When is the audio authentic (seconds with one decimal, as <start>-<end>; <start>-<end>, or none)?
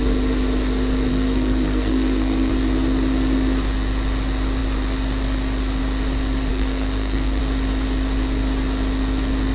0.0-1.1; 2.5-6.5; 7.4-9.5